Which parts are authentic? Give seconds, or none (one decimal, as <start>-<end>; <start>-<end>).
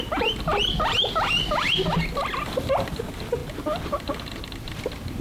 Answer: 0.6-2.7